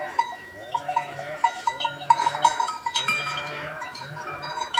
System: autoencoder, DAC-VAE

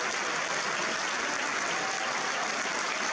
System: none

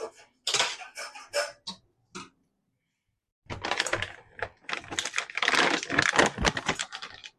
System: none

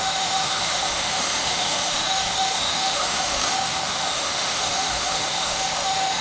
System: autoencoder, DAC-VAE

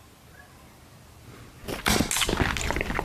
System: none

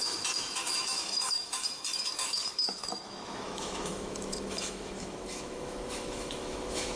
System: autoencoder, DAC-VAE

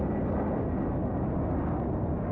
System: none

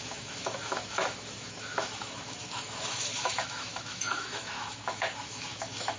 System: autoencoder, DAC-VAE